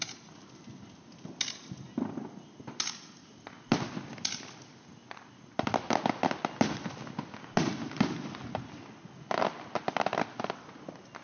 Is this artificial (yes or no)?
no